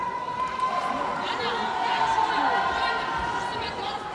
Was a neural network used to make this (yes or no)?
no